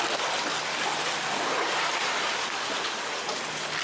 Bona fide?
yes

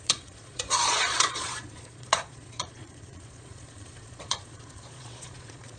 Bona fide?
no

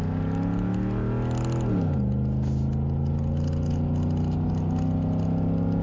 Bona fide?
yes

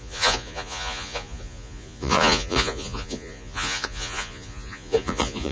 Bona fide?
no